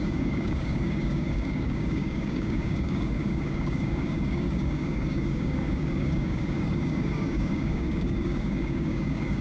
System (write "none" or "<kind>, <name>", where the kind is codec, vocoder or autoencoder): codec, DAC